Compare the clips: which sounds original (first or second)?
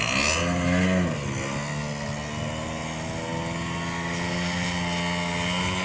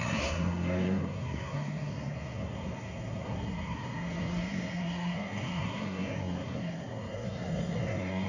first